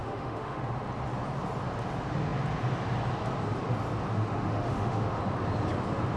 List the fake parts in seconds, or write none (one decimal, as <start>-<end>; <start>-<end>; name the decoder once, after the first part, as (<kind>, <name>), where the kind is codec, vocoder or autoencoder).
0.0-0.7 (autoencoder, DAC-VAE); 4.1-5.2